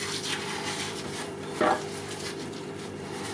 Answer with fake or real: fake